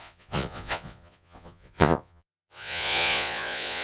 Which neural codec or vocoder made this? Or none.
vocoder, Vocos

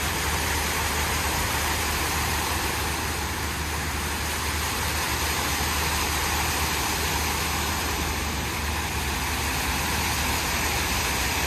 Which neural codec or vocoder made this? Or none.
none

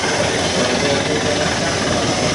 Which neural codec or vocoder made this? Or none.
none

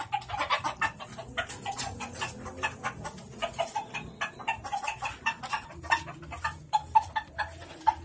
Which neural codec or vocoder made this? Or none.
none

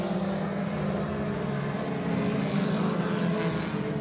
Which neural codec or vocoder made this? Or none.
none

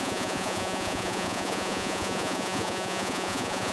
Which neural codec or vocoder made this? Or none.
vocoder, Vocos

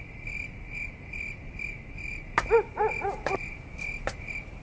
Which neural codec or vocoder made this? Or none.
none